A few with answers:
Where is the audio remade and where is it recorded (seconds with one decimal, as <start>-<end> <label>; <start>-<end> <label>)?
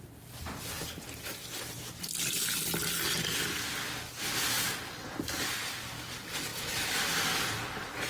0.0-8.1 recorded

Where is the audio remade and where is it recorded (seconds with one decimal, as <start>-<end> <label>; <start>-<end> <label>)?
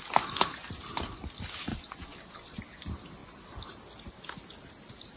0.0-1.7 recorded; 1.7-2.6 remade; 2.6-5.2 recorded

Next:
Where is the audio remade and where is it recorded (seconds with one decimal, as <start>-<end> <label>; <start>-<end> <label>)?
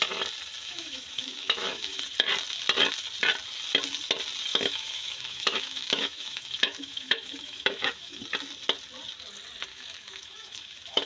0.0-0.6 recorded; 0.6-2.0 remade; 2.0-4.5 recorded; 4.5-8.2 remade; 8.2-9.7 recorded; 9.7-11.1 remade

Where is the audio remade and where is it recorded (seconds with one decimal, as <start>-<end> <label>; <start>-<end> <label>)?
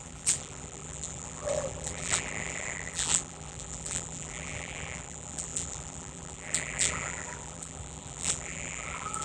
0.0-9.2 remade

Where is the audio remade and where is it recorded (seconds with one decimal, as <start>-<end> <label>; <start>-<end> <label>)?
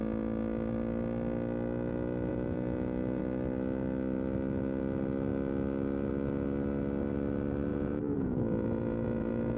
0.0-2.3 recorded; 2.3-3.2 remade; 3.2-7.7 recorded; 7.7-9.6 remade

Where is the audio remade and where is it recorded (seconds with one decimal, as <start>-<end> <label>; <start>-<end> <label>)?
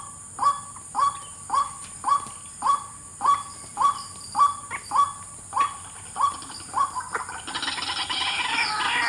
0.0-9.1 recorded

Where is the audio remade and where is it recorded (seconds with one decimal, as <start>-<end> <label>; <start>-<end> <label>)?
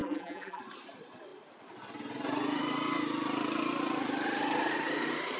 0.0-0.6 remade; 0.6-5.4 recorded